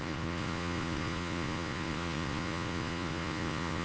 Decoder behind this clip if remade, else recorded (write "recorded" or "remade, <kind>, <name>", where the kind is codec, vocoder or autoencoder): remade, vocoder, Vocos